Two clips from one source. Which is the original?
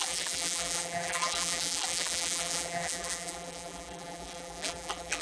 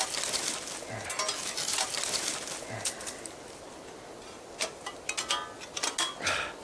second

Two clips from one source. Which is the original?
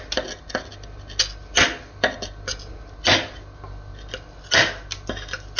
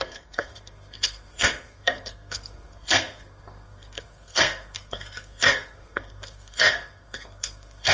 first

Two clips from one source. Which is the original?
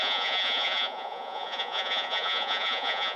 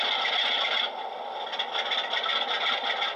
second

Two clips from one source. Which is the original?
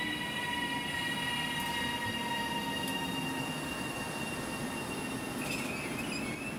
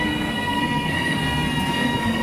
first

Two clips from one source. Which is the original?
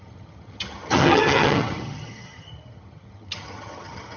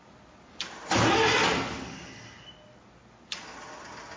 second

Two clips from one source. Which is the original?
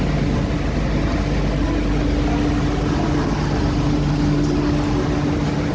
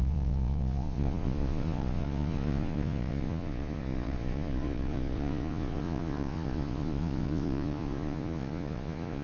first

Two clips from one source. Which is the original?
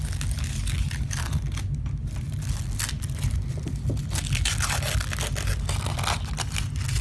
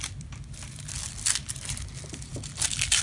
first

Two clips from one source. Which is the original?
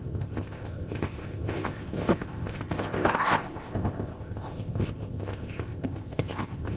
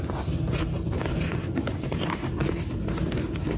second